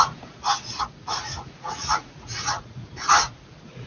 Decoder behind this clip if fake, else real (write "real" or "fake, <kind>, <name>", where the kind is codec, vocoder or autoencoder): fake, vocoder, Vocos